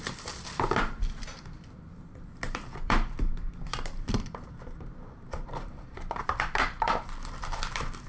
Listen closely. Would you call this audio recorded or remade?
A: remade